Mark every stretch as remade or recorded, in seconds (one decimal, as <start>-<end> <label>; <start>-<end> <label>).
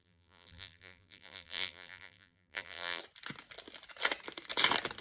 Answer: 0.0-3.0 remade; 3.0-5.0 recorded